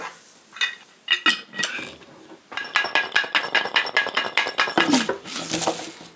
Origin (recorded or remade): recorded